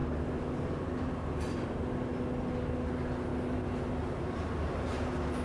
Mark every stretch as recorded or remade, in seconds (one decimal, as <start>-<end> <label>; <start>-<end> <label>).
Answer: 0.0-5.4 recorded

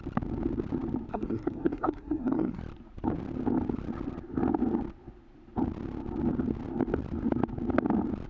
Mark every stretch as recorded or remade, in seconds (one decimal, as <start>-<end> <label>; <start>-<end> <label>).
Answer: 0.0-1.1 recorded; 1.1-2.6 remade; 2.6-8.3 recorded

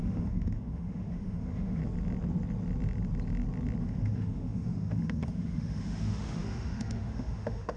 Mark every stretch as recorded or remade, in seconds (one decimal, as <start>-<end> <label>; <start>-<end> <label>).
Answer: 0.0-1.8 remade; 1.8-3.8 recorded; 3.8-7.8 remade

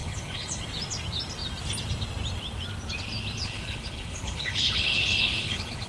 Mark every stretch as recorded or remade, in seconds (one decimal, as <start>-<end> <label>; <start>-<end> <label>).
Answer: 0.0-0.6 remade; 0.6-3.4 recorded; 3.4-5.9 remade

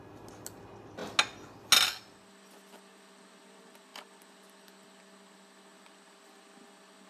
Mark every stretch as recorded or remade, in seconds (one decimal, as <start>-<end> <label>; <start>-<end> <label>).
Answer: 0.0-7.1 recorded